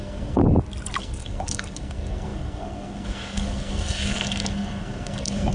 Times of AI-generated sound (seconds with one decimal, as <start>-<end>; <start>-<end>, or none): 0.0-0.4; 1.0-5.5